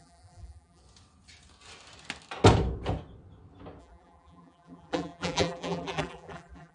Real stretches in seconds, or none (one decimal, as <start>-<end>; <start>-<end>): 0.8-3.8